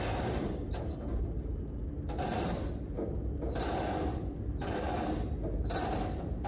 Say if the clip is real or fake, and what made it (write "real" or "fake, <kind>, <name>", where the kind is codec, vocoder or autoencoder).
real